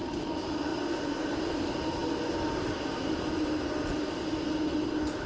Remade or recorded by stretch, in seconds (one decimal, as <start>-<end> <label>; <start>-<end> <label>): 0.0-5.3 recorded